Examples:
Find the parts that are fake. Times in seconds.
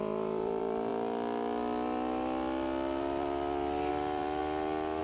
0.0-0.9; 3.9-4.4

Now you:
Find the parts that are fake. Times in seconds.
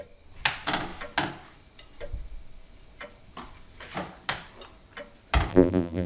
5.5-6.1